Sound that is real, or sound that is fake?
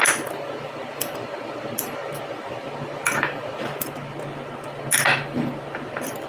real